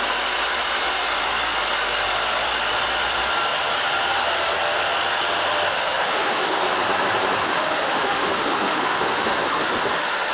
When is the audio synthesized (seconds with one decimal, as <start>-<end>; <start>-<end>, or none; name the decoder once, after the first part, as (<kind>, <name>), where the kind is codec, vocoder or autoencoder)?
5.7-6.6 (autoencoder, DAC-VAE); 7.4-10.3